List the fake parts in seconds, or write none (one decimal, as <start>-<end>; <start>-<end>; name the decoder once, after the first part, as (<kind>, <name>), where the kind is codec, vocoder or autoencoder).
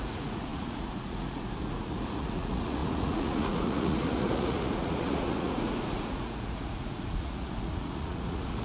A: 0.0-8.6 (vocoder, Vocos)